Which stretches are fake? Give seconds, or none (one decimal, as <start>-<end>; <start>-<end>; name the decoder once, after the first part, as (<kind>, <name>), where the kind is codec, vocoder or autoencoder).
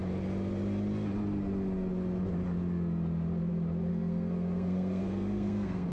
3.9-5.9 (codec, SNAC)